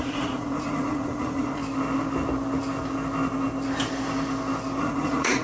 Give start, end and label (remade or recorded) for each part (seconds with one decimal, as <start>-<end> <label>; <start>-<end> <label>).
0.0-1.6 remade; 1.6-4.8 recorded; 4.8-5.4 remade

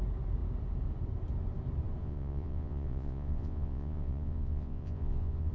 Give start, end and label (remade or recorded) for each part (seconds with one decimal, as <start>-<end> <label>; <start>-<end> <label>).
0.0-2.0 recorded; 2.0-5.5 remade

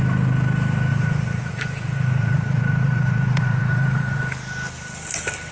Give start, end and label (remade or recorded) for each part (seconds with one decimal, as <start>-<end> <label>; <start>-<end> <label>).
0.0-0.9 recorded; 0.9-4.2 remade; 4.2-5.5 recorded

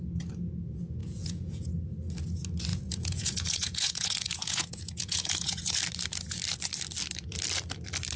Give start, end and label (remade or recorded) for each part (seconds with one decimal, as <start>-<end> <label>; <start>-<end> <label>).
0.0-1.0 recorded; 1.0-1.7 remade; 1.7-2.7 recorded; 2.7-5.7 remade; 5.7-8.2 recorded

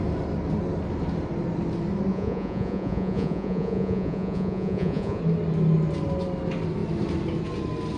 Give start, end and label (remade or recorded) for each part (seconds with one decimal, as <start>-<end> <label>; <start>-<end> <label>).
0.0-2.1 recorded; 2.1-5.2 remade; 5.2-8.0 recorded

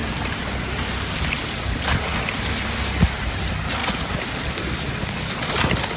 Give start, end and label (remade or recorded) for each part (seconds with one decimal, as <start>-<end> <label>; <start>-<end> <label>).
0.0-6.0 recorded

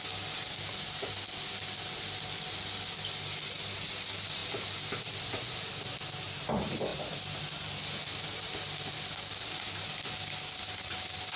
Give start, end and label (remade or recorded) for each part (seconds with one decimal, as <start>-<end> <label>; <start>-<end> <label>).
0.0-11.4 recorded

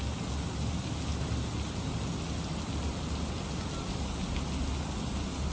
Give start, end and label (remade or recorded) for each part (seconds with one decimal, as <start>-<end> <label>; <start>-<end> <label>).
0.0-5.5 recorded